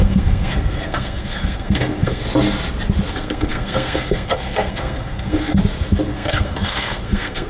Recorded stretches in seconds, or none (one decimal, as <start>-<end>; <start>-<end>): 2.2-3.1; 5.6-6.1